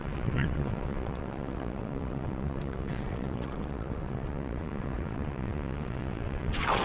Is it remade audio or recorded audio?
remade